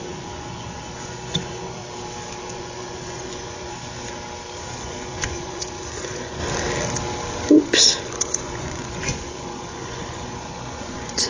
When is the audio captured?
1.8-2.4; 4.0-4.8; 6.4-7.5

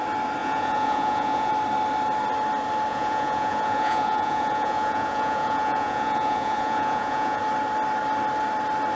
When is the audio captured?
0.0-0.4; 1.5-2.9; 7.4-8.9

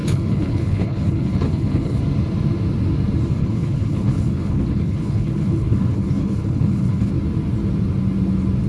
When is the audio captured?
2.0-3.4; 7.1-8.7

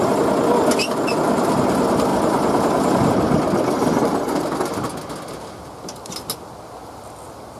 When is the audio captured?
0.0-2.1; 3.1-7.6

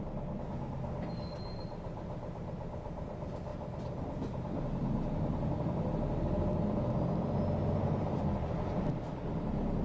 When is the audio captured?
0.0-9.8

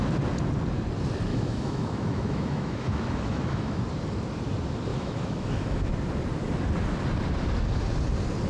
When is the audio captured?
0.0-1.3; 3.8-4.9; 5.9-8.5

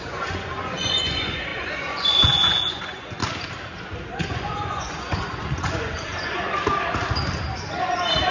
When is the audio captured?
3.2-4.2; 6.6-8.3